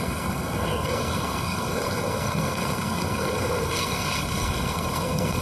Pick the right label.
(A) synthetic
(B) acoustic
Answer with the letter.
A